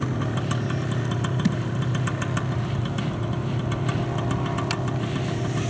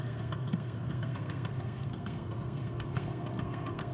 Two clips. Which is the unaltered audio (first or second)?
first